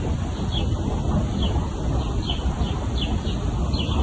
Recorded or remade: recorded